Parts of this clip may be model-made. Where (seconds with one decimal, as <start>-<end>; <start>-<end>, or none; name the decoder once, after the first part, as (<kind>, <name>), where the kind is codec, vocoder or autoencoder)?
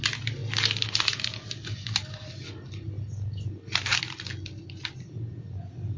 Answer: none